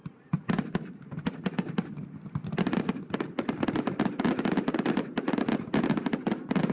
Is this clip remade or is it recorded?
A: recorded